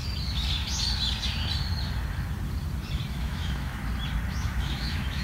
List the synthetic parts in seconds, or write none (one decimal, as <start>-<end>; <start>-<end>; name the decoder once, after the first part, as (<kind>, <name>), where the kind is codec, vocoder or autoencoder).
3.1-3.8 (autoencoder, DAC-VAE); 4.3-5.2